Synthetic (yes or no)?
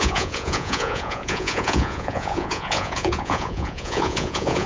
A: yes